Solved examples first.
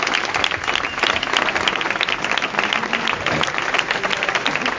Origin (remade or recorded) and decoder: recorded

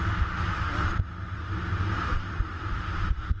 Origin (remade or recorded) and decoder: recorded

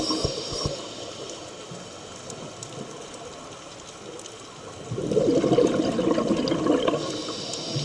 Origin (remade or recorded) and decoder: recorded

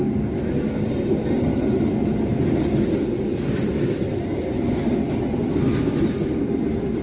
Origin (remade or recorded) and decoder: recorded